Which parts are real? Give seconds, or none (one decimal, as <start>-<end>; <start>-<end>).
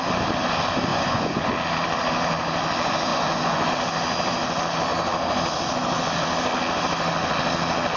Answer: 0.0-0.9; 1.4-3.1; 3.7-8.0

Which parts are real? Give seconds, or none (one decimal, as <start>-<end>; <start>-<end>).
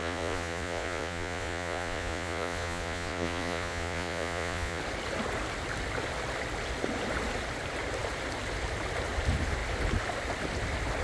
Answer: 4.8-11.0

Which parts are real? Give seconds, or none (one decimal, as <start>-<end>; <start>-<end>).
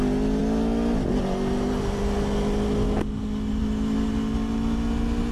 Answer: 0.0-5.3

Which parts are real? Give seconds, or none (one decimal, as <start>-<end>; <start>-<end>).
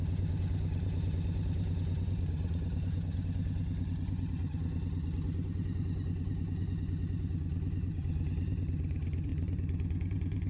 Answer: none